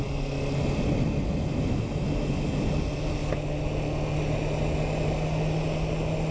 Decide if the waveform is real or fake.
real